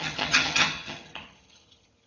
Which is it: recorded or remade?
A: remade